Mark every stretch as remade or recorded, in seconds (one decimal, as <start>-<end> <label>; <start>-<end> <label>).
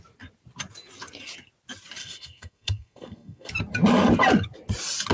0.0-2.0 recorded; 2.0-3.5 remade; 3.5-5.1 recorded